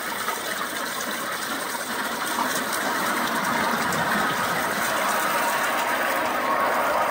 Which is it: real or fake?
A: fake